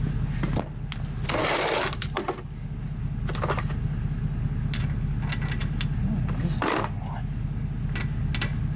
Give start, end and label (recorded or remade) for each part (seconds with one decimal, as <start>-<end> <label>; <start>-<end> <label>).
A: 0.0-8.8 recorded

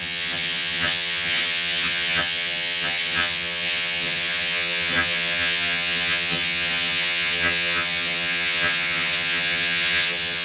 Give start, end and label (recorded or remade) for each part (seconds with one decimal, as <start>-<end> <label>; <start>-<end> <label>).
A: 0.0-10.4 remade

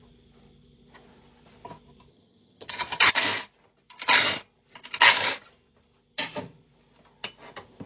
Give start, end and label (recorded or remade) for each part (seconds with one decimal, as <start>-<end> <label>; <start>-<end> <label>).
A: 0.0-2.1 recorded; 2.1-3.1 remade; 3.1-7.9 recorded

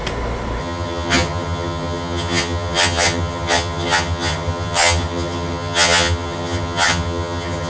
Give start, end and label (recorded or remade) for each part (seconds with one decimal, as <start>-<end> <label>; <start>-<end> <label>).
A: 0.0-0.6 recorded; 0.6-7.7 remade

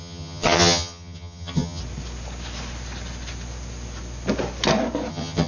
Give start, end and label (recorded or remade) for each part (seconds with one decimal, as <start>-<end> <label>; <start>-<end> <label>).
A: 0.0-1.8 remade; 1.8-5.1 recorded; 5.1-5.5 remade